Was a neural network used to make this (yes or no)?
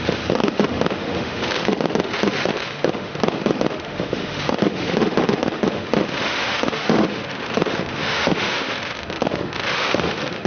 yes